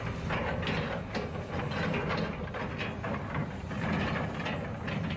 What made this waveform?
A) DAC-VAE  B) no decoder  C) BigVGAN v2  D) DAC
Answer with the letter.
B